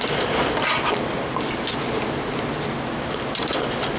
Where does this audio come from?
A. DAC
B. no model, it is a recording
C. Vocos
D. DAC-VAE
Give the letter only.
B